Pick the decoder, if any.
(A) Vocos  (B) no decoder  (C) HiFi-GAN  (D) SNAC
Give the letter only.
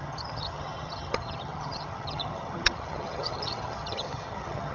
C